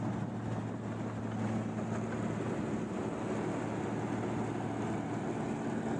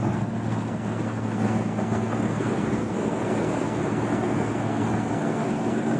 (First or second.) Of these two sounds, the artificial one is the second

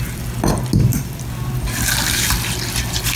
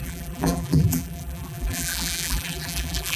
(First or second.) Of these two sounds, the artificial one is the second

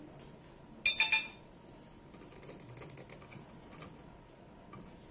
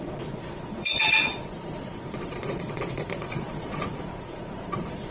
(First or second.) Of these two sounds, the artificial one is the second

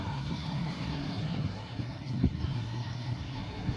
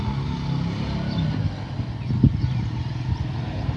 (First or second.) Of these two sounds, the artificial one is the first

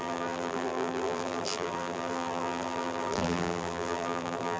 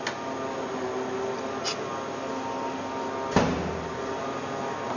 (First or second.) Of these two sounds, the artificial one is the first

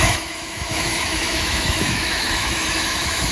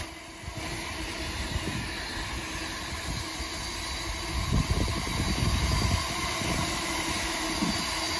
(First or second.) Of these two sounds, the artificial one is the first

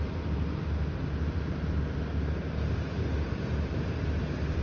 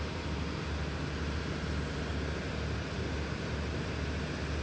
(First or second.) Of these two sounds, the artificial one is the first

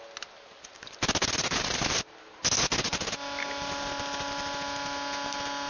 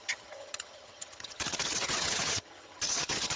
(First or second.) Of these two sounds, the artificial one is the second